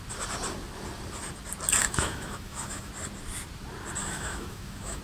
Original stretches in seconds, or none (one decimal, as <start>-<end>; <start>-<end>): 0.0-1.8; 2.9-4.0